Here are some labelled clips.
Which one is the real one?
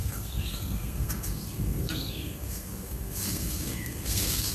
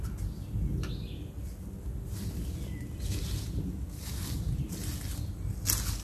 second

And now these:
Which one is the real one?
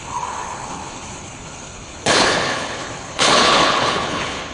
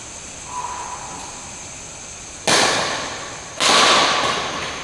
second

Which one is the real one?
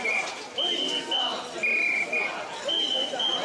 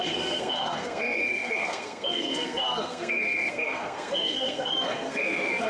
first